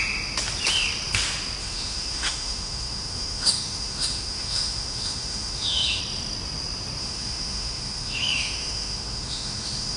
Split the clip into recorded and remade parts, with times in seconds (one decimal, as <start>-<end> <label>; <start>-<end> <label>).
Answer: 0.0-1.6 recorded; 1.6-6.0 remade; 6.0-7.0 recorded; 7.0-10.0 remade